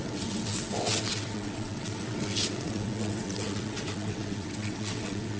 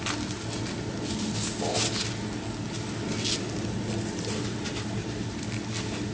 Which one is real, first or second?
second